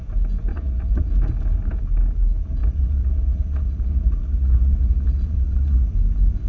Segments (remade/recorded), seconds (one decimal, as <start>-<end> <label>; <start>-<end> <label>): 0.0-0.5 recorded; 0.5-1.1 remade; 1.1-2.6 recorded; 2.6-5.9 remade; 5.9-6.5 recorded